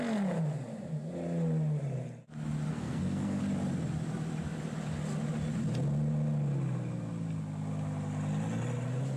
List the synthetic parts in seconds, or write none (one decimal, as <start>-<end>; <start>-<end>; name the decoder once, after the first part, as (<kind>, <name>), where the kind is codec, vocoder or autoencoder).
2.7-3.4 (codec, SNAC)